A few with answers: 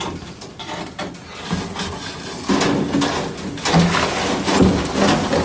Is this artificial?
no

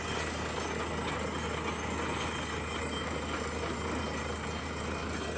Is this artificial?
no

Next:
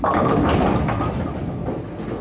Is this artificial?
no